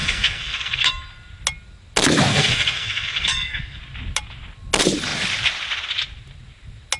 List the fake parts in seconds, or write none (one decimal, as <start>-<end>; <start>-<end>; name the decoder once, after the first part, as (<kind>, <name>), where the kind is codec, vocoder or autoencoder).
0.0-0.9 (codec, SNAC); 2.3-3.8

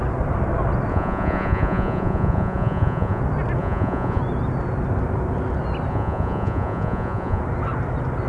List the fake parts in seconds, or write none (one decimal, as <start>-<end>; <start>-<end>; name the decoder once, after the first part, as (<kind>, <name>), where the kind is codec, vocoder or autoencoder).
0.9-3.2 (vocoder, Vocos); 3.6-4.2; 5.9-7.4